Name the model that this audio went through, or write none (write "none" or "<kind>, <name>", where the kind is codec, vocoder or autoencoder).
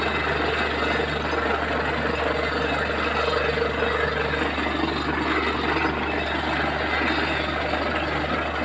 none